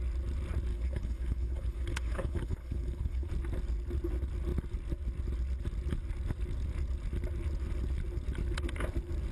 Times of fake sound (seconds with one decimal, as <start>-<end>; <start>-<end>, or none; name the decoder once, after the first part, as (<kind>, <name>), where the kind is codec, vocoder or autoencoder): 0.7-3.3 (codec, HILCodec)